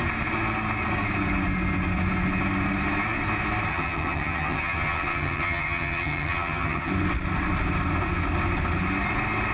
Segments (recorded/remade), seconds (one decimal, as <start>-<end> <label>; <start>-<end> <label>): 0.0-3.7 recorded; 3.7-6.9 remade; 6.9-9.5 recorded